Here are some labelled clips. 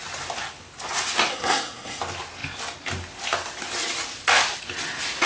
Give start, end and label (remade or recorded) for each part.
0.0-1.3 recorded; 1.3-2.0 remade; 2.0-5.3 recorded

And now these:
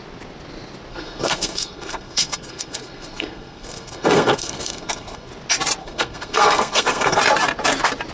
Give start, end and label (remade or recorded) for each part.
0.0-0.9 recorded; 0.9-5.3 remade; 5.3-5.8 recorded; 5.8-7.2 remade; 7.2-8.1 recorded

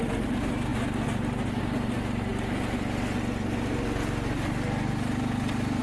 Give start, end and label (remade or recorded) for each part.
0.0-5.8 recorded